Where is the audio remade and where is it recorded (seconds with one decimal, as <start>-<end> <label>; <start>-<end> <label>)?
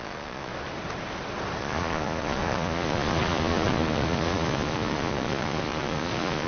0.0-0.5 remade; 0.5-1.6 recorded; 1.6-6.5 remade